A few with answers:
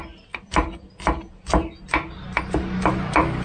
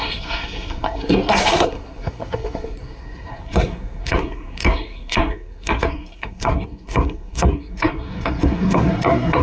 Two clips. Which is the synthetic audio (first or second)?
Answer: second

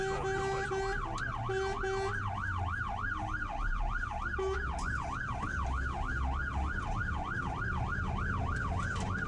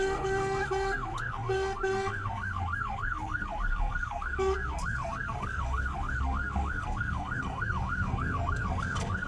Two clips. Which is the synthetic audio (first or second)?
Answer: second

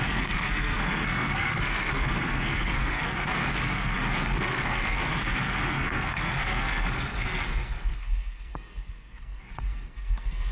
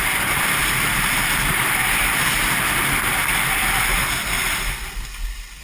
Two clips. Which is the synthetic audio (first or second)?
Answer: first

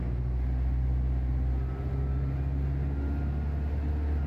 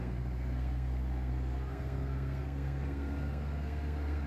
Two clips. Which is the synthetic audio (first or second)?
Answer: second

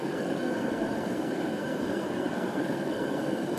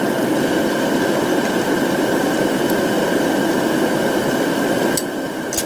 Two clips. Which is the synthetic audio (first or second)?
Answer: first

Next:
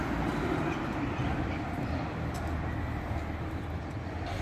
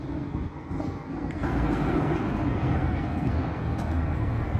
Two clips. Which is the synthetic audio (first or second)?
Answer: second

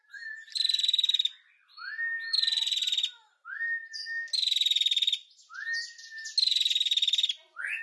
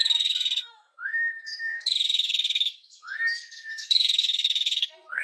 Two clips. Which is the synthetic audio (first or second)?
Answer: second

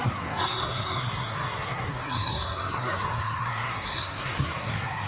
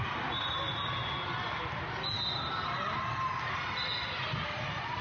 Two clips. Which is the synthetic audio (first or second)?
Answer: first